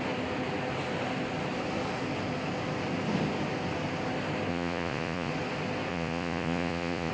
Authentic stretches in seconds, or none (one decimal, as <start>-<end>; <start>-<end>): 0.0-4.5; 5.3-5.9